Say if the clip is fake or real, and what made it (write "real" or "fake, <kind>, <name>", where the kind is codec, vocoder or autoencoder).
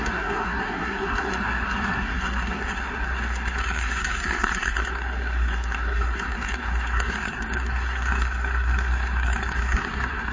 fake, codec, SNAC